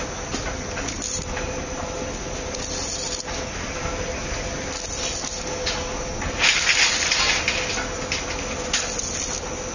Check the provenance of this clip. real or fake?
real